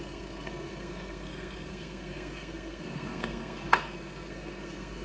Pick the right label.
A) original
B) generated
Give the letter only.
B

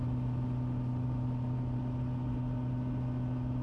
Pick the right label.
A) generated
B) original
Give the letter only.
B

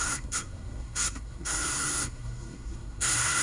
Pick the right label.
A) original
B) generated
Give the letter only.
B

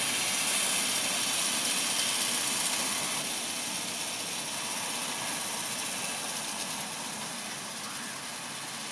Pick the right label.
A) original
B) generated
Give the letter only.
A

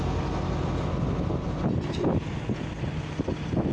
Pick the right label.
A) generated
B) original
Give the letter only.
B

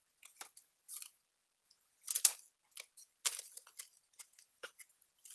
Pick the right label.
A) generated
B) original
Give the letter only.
B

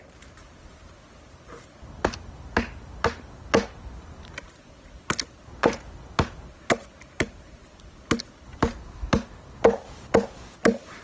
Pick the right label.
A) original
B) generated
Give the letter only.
A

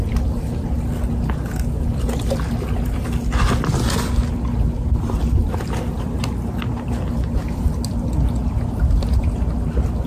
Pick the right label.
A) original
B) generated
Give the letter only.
A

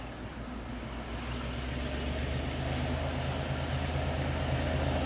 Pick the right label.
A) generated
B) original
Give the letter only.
B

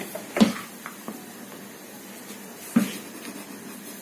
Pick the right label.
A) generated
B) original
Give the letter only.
B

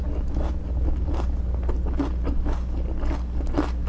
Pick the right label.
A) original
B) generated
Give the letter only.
A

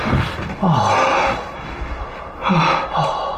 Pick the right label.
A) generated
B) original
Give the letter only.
B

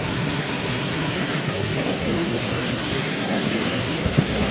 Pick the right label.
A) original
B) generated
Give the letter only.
B